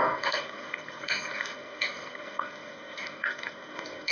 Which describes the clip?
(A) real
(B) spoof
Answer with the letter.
B